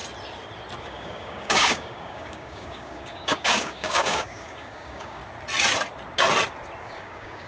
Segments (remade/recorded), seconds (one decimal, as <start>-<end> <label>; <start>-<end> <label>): 0.0-0.8 recorded; 0.8-5.2 remade; 5.2-6.8 recorded; 6.8-7.5 remade